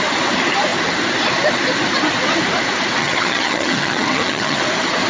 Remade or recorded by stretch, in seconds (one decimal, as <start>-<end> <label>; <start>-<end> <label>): 0.0-3.0 recorded; 3.0-4.6 remade; 4.6-5.1 recorded